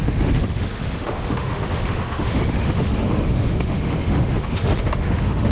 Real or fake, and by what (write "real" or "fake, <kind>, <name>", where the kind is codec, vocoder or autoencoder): fake, autoencoder, DAC-VAE